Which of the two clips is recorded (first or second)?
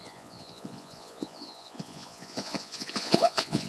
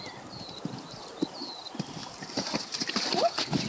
second